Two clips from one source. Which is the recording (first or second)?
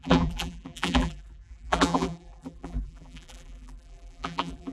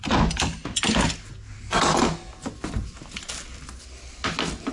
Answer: second